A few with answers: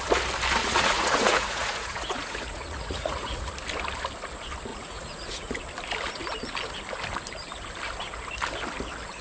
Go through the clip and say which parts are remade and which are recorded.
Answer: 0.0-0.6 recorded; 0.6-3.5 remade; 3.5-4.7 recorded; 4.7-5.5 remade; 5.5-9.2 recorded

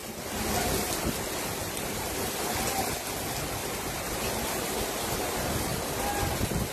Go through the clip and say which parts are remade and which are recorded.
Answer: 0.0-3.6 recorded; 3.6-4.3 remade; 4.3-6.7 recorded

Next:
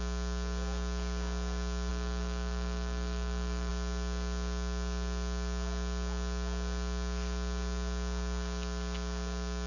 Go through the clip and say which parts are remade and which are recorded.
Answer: 0.0-1.9 recorded; 1.9-3.7 remade; 3.7-9.7 recorded